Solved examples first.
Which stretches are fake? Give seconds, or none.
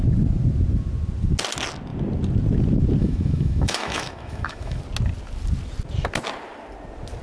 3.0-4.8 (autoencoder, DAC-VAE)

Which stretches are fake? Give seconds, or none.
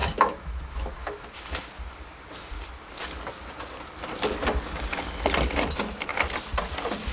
0.0-1.7 (autoencoder, DAC-VAE)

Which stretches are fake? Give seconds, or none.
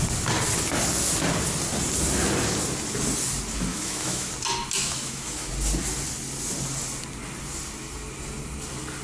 3.7-4.3 (autoencoder, DAC-VAE); 4.8-5.5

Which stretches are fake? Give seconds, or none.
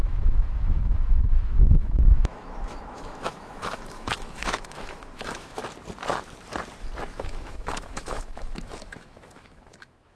0.0-5.6 (autoencoder, DAC-VAE); 7.1-10.2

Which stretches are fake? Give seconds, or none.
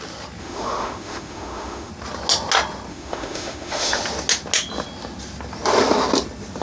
0.4-1.9 (autoencoder, DAC-VAE); 2.9-4.0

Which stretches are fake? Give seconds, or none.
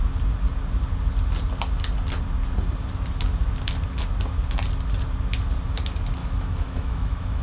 6.2-7.4 (autoencoder, DAC-VAE)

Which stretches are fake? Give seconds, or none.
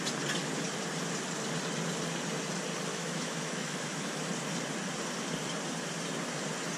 2.9-4.3 (autoencoder, DAC-VAE)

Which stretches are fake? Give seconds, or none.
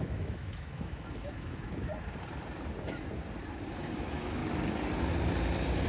0.0-1.9 (autoencoder, DAC-VAE); 3.7-4.4